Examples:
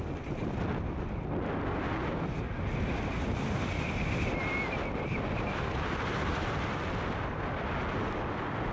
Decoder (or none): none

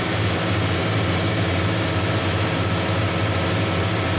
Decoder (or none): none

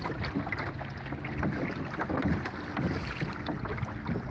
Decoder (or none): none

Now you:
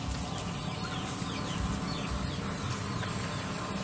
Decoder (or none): none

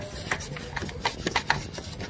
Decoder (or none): none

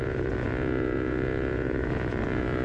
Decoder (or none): vocoder, Vocos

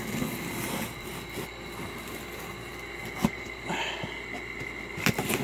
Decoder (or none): none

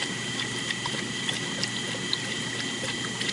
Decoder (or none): none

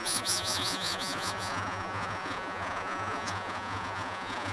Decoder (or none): vocoder, Vocos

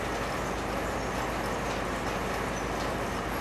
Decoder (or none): none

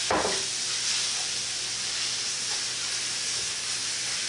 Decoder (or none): none